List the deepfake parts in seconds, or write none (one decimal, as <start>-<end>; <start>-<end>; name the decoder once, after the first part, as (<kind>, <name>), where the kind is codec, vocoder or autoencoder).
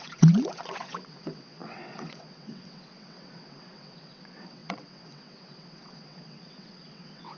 0.0-7.4 (vocoder, WaveNeXt)